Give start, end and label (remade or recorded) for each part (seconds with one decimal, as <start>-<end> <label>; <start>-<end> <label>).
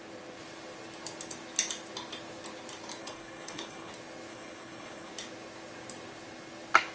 0.0-3.0 recorded; 3.0-3.9 remade; 3.9-4.3 recorded; 4.3-5.1 remade; 5.1-6.9 recorded